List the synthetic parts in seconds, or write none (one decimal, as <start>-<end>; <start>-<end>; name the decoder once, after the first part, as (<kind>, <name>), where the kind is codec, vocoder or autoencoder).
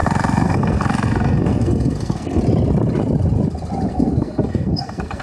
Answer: 0.0-2.4 (codec, SNAC); 3.9-5.2